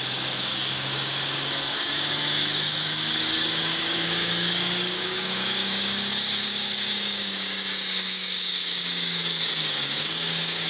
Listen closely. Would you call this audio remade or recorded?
remade